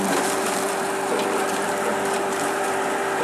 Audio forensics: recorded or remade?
remade